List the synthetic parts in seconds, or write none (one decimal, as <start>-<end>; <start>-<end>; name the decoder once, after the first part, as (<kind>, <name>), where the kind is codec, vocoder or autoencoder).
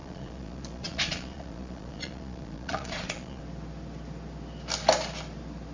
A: 0.0-3.4 (vocoder, Vocos)